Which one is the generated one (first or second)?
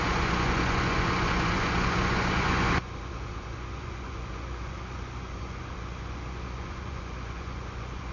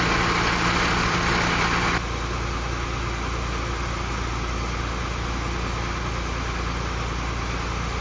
first